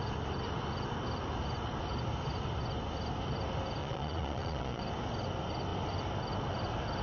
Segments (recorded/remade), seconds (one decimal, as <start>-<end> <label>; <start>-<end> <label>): 0.0-3.8 recorded; 3.8-4.8 remade; 4.8-7.0 recorded